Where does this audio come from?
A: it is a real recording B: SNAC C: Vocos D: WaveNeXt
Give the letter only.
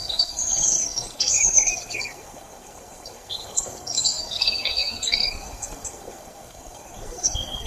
B